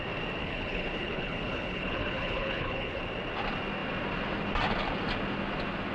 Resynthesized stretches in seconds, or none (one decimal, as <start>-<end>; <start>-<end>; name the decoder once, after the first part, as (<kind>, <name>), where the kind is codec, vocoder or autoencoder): 0.4-3.0 (codec, HILCodec)

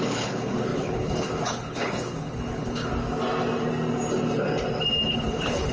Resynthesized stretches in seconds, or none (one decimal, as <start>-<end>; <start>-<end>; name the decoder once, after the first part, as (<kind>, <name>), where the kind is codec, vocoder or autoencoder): 0.0-2.9 (codec, HILCodec); 5.1-5.7

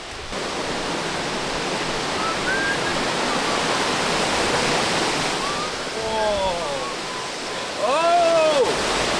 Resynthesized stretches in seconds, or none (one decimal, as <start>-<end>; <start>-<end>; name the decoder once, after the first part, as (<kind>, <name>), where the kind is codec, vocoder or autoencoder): none

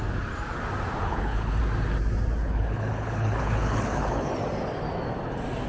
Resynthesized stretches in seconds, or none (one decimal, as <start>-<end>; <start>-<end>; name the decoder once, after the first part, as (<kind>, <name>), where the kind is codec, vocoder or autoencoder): 1.0-1.6 (codec, HILCodec); 2.4-4.3